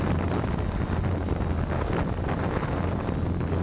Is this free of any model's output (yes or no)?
yes